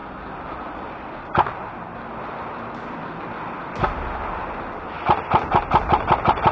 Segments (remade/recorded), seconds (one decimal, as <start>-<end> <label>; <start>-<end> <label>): 0.0-6.5 recorded